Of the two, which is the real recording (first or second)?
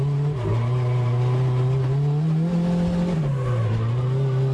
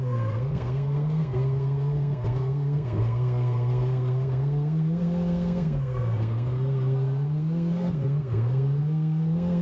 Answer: first